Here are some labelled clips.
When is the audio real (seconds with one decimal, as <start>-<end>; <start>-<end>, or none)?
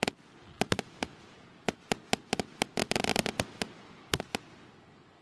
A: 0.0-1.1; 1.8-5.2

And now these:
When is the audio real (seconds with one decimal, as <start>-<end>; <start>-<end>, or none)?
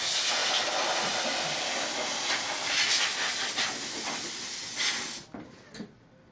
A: 0.0-0.4; 1.7-6.3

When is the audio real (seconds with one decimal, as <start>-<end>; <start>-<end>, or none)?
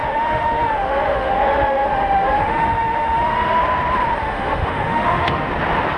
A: 3.6-4.2; 5.5-6.0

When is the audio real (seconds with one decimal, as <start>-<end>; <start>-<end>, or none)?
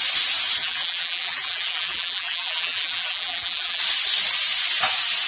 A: 0.0-0.6; 3.8-5.3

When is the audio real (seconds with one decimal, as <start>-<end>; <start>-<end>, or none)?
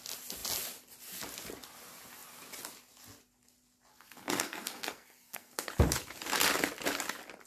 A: 0.0-3.9; 5.7-7.5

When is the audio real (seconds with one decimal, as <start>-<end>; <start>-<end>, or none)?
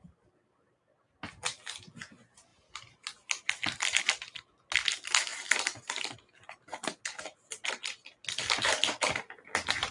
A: 0.0-2.5; 4.0-5.3; 7.0-9.9